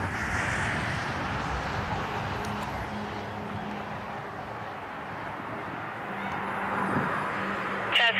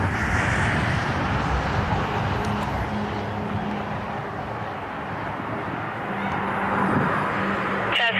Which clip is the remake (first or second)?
second